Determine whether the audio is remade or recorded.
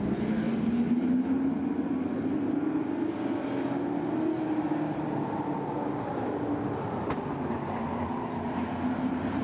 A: recorded